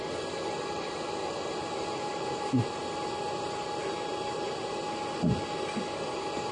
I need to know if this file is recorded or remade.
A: recorded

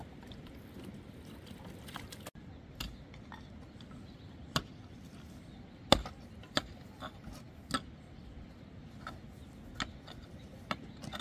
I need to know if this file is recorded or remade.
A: recorded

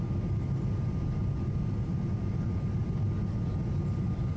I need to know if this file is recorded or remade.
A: recorded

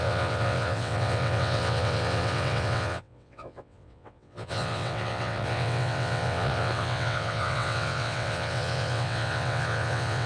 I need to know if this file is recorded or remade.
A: remade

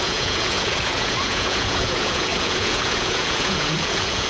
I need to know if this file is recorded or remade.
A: remade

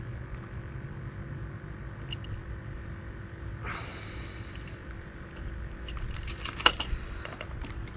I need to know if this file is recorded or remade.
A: recorded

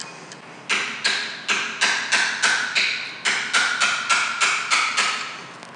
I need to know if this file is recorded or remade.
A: recorded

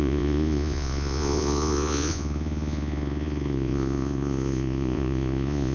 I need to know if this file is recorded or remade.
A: remade